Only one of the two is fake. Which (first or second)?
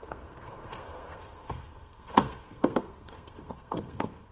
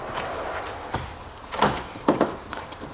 first